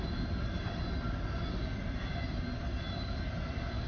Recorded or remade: recorded